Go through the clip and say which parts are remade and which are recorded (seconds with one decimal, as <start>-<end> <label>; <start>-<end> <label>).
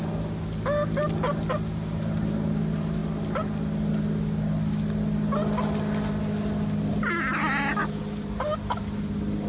0.0-9.5 recorded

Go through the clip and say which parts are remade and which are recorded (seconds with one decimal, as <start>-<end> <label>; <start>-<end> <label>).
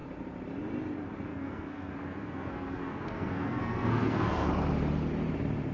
0.0-1.3 recorded; 1.3-4.5 remade; 4.5-5.7 recorded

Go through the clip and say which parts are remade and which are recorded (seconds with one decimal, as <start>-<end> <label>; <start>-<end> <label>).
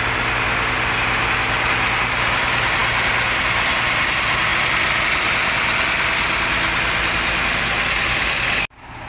0.0-9.1 recorded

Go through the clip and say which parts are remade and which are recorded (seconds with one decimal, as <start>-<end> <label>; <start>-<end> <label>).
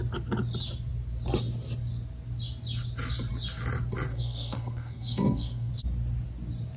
0.0-4.1 recorded; 4.1-5.7 remade; 5.7-6.8 recorded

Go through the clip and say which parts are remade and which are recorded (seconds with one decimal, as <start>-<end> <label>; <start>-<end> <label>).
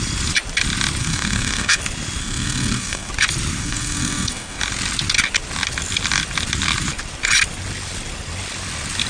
0.0-1.0 recorded; 1.0-1.8 remade; 1.8-2.2 recorded; 2.2-3.1 remade; 3.1-3.6 recorded; 3.6-4.6 remade; 4.6-9.1 recorded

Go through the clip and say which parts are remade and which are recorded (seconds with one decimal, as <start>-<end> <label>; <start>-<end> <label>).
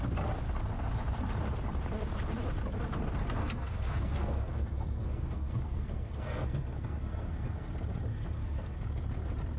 0.0-3.4 recorded; 3.4-7.7 remade; 7.7-8.1 recorded; 8.1-8.8 remade; 8.8-9.6 recorded